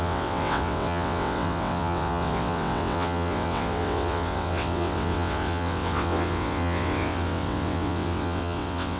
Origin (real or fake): fake